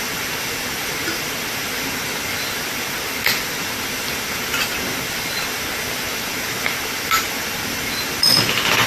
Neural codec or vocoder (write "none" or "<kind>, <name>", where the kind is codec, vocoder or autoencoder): none